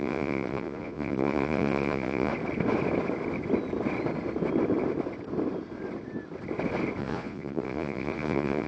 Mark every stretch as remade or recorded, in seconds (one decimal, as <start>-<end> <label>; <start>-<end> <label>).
0.0-2.3 remade; 2.3-7.0 recorded; 7.0-8.7 remade